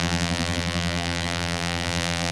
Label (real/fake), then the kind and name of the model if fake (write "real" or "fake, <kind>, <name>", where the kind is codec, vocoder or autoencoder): fake, vocoder, BigVGAN v2